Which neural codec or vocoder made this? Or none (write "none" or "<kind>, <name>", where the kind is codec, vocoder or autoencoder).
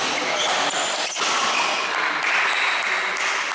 none